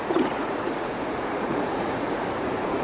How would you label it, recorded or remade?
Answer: remade